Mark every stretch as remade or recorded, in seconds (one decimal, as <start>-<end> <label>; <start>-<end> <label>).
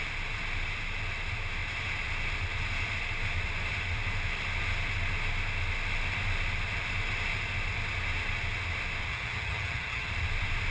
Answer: 0.0-9.1 recorded; 9.1-10.1 remade; 10.1-10.7 recorded